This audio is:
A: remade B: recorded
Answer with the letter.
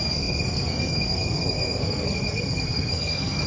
A